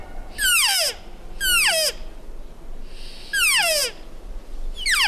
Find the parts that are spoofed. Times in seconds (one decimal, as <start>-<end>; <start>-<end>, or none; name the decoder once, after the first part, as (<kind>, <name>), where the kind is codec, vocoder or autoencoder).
0.0-0.5 (vocoder, BigVGAN v2)